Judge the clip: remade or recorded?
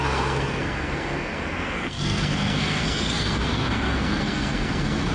remade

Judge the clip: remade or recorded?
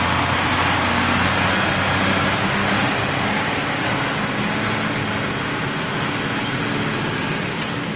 recorded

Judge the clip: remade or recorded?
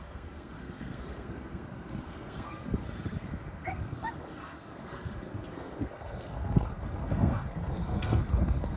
remade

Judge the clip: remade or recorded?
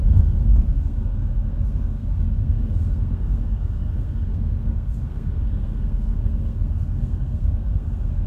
remade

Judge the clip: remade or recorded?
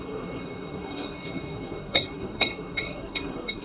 remade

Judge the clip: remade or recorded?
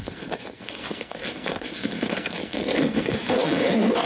remade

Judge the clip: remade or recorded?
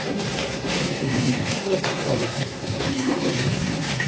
remade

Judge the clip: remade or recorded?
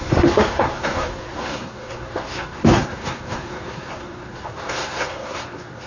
remade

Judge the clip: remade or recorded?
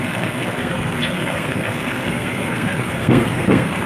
remade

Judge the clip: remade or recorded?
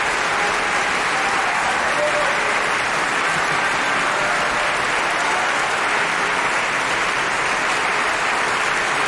recorded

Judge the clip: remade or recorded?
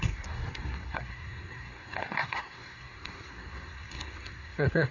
remade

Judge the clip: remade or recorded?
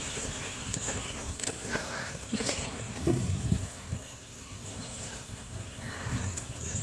remade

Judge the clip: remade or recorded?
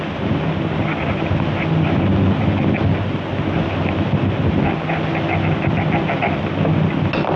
recorded